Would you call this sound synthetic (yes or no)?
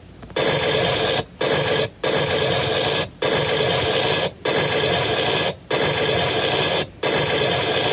no